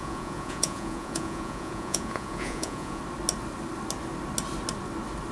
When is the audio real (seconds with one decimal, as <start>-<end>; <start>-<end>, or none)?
3.0-5.3